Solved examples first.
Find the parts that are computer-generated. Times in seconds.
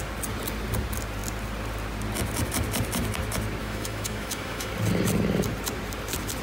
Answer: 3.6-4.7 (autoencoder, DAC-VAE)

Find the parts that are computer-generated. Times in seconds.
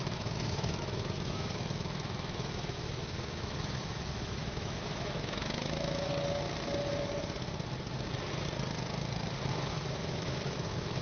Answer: 0.0-6.1 (autoencoder, DAC-VAE); 9.5-11.0